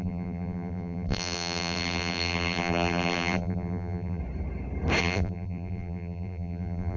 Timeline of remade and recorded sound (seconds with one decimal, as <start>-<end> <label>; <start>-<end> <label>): 0.0-4.2 remade; 4.2-5.0 recorded; 5.0-7.0 remade